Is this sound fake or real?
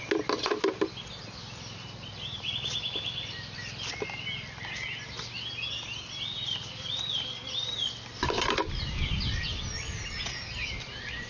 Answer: real